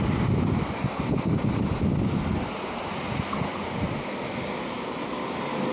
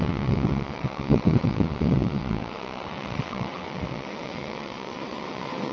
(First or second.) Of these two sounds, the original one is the first